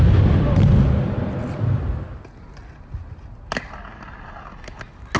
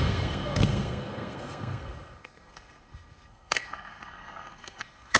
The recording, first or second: first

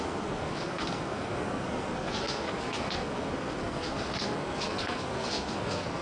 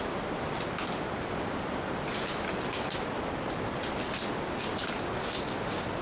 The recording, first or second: second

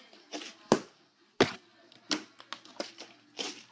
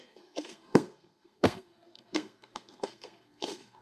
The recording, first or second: first